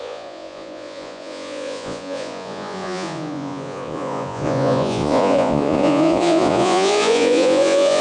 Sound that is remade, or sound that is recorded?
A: remade